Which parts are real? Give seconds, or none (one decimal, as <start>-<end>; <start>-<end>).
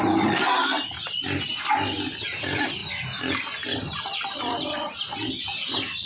0.0-6.0